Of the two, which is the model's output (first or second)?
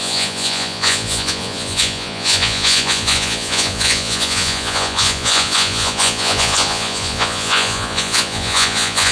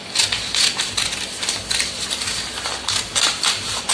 first